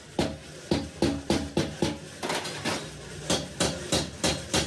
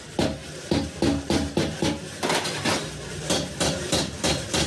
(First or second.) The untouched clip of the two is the first